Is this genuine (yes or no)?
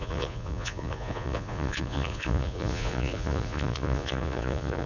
no